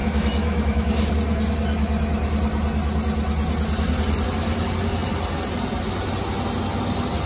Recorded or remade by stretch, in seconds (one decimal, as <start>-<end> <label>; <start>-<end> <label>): 0.0-1.1 remade; 1.1-7.3 recorded